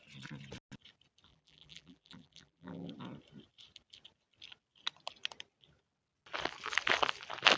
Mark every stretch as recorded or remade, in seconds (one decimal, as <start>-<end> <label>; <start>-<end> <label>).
0.0-1.3 recorded; 1.3-2.9 remade; 2.9-7.6 recorded